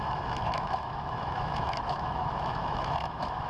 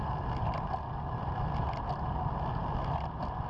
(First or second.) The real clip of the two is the second